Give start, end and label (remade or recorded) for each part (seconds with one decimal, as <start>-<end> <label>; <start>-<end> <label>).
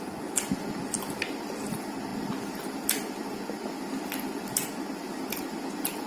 0.0-6.1 recorded